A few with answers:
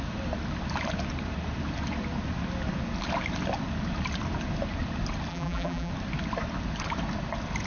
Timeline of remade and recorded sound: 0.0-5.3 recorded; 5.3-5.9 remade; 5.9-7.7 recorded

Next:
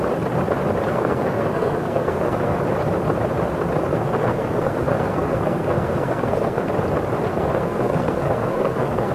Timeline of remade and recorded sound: 0.0-0.9 recorded; 0.9-2.6 remade; 2.6-3.9 recorded; 3.9-6.7 remade; 6.7-7.3 recorded; 7.3-9.1 remade

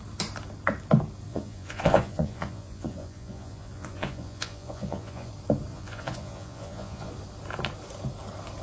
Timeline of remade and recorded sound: 0.0-1.3 recorded; 1.3-5.3 remade; 5.3-5.7 recorded; 5.7-7.1 remade; 7.1-8.6 recorded

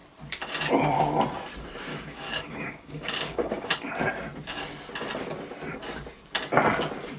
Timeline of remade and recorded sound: 0.0-1.9 recorded; 1.9-3.7 remade; 3.7-7.2 recorded